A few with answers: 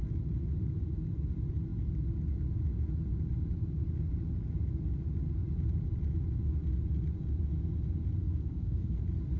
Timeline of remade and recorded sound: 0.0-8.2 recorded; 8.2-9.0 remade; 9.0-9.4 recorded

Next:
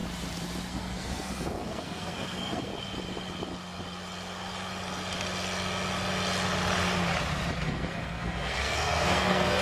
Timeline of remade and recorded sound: 0.0-0.7 recorded; 0.7-2.7 remade; 2.7-7.6 recorded; 7.6-9.6 remade

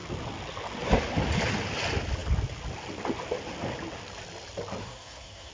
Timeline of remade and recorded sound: 0.0-4.8 recorded; 4.8-5.5 remade

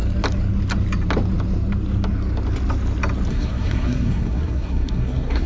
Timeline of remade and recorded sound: 0.0-3.3 recorded; 3.3-5.5 remade